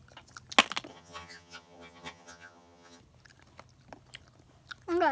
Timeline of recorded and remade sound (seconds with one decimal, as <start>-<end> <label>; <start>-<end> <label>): 0.0-0.9 recorded; 0.9-3.0 remade; 3.0-5.1 recorded